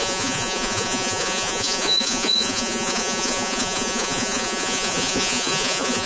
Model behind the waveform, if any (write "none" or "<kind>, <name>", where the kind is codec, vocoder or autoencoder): vocoder, Vocos